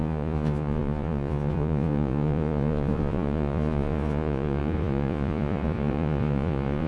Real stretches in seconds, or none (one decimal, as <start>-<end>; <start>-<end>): none